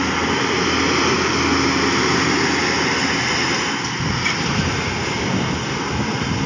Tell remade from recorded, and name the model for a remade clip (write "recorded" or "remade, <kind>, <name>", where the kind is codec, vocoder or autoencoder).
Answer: recorded